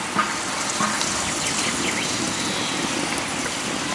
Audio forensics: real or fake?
real